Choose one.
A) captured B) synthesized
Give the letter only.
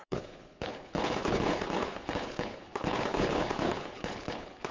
B